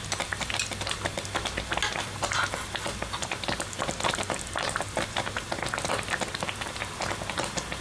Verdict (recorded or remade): recorded